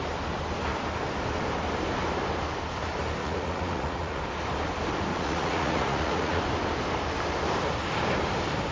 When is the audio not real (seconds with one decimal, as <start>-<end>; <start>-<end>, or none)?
3.2-4.2; 5.1-6.4